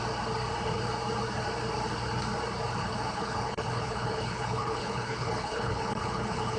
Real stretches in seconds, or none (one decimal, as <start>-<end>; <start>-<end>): 0.0-2.8